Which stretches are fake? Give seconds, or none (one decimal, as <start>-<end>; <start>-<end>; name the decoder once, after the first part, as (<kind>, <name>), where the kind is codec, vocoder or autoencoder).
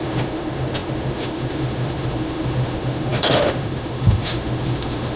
0.0-5.2 (autoencoder, DAC-VAE)